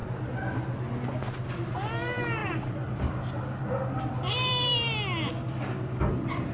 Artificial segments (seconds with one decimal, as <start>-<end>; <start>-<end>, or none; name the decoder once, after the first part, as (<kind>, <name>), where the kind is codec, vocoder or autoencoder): 1.5-4.9 (vocoder, BigVGAN v2); 6.1-6.5